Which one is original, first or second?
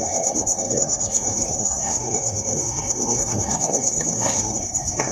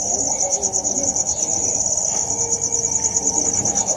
second